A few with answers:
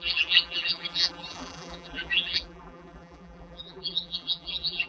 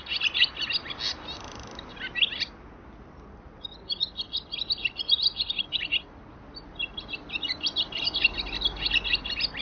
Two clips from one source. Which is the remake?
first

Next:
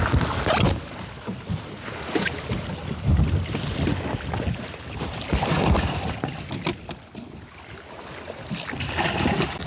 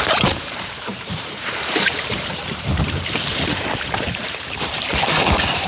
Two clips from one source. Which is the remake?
second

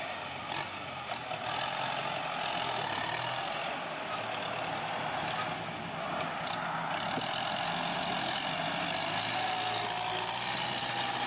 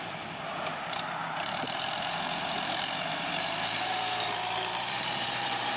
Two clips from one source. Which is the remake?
second